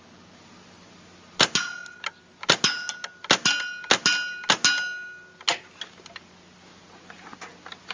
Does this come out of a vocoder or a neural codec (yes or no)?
no